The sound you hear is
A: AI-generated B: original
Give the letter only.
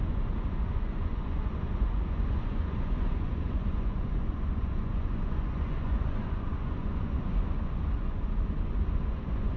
A